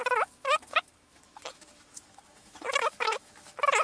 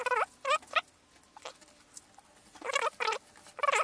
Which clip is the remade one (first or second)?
first